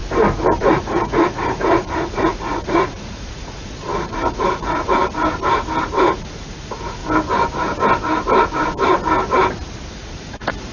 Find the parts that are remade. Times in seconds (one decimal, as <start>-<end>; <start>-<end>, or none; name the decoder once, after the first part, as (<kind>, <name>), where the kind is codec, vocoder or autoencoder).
0.6-5.0 (vocoder, Vocos); 6.0-7.0; 9.9-10.7